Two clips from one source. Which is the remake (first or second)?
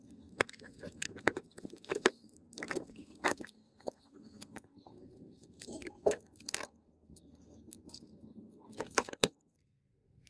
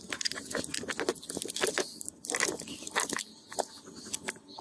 first